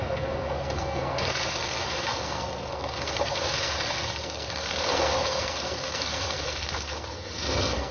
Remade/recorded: remade